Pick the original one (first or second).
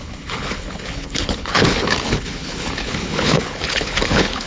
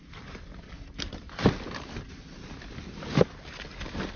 second